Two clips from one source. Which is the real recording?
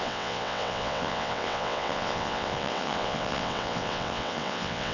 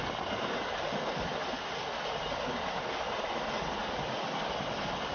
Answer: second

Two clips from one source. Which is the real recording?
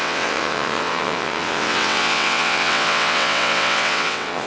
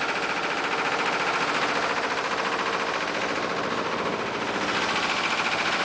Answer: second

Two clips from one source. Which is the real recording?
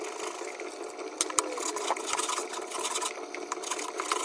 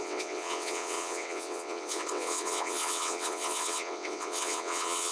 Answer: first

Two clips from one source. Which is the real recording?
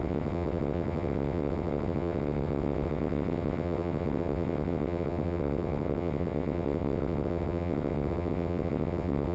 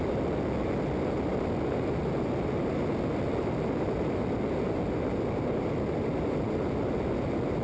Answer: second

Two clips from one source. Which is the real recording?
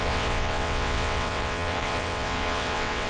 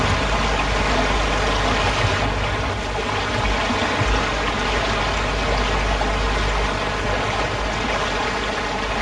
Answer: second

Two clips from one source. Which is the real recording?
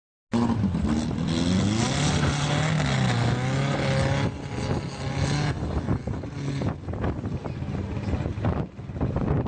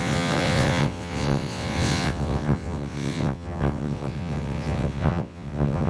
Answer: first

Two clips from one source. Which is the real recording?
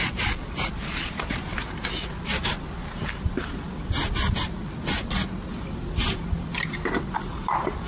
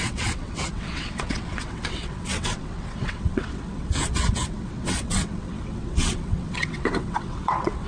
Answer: first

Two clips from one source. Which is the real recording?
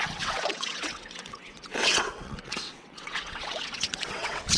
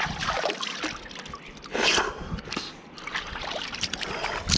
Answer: second